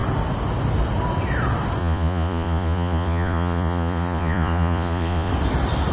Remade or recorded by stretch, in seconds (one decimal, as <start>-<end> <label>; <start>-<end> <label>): 0.0-1.8 recorded; 1.8-5.3 remade; 5.3-5.9 recorded

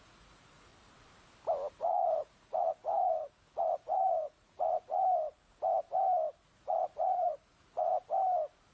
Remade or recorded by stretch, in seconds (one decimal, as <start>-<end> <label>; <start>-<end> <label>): 0.0-0.7 remade; 0.7-1.7 recorded; 1.7-5.0 remade; 5.0-6.4 recorded; 6.4-7.9 remade; 7.9-8.7 recorded

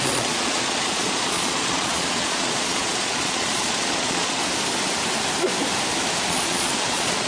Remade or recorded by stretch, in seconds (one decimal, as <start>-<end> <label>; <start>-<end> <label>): 0.0-4.4 remade; 4.4-6.3 recorded; 6.3-7.3 remade

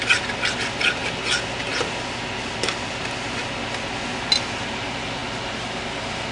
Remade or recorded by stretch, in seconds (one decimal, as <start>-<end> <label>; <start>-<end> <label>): 0.0-6.3 recorded

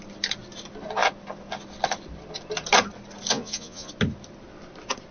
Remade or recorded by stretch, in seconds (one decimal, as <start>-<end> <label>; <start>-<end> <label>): 0.0-3.3 recorded; 3.3-3.9 remade; 3.9-5.1 recorded

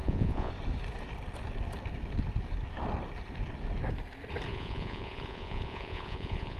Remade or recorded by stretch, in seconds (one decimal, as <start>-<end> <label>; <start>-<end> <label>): 0.0-0.5 remade; 0.5-4.5 recorded; 4.5-6.6 remade

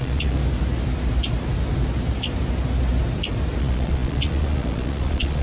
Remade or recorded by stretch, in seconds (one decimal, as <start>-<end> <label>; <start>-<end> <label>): 0.0-0.4 remade; 0.4-3.6 recorded; 3.6-5.4 remade